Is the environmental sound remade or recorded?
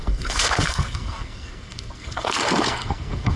remade